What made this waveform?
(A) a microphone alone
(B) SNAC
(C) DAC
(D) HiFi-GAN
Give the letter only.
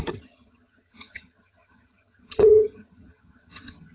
D